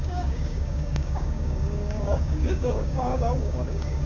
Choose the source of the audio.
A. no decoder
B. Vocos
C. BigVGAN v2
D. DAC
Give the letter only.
D